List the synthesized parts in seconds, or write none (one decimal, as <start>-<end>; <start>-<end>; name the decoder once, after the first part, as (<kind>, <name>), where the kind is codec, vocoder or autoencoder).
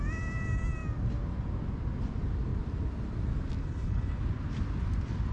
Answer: 3.6-4.2 (codec, HILCodec)